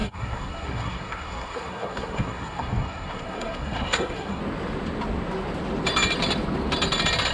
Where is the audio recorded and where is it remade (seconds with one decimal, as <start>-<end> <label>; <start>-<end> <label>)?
0.0-4.4 remade; 4.4-7.3 recorded